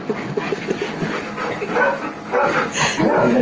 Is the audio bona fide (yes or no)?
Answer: yes